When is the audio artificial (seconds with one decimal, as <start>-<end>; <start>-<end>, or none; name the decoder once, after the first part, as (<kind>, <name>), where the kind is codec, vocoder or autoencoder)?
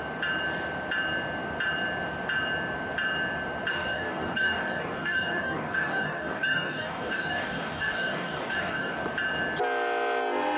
3.7-9.0 (codec, DAC)